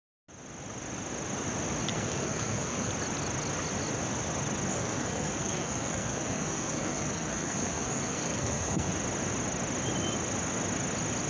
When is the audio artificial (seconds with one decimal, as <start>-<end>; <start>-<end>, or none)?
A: 1.9-2.9; 4.7-8.9

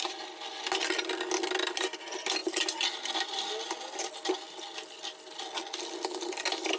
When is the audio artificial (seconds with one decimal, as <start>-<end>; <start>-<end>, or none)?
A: none